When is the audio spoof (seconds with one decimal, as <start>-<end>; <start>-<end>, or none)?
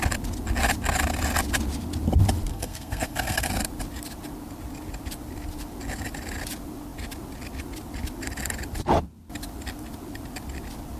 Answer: 2.5-3.5